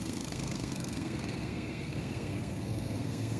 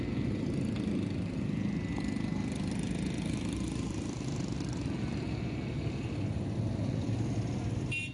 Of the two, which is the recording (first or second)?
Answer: second